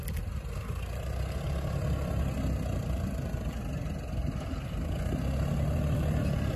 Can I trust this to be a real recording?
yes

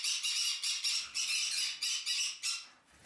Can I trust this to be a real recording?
yes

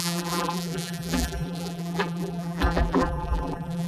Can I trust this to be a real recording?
no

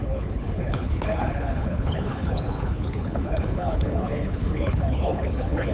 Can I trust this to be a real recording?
no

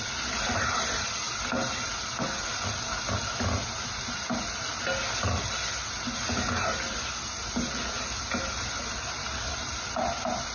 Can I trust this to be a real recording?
yes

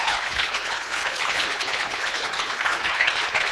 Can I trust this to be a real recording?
no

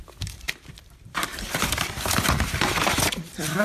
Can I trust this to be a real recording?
no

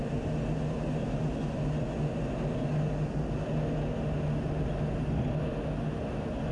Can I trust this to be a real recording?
yes